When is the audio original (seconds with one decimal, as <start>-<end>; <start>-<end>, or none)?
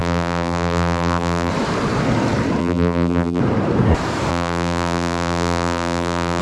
1.5-2.6; 3.4-4.3